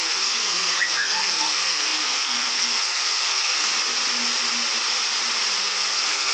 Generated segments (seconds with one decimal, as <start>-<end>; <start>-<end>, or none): 0.0-3.7; 5.6-6.3